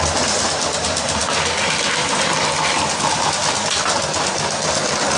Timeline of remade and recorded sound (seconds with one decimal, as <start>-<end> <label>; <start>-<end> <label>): 0.0-5.2 recorded